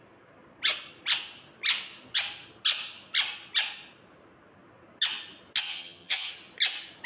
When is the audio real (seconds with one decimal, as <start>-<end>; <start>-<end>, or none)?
0.0-5.7; 6.3-7.1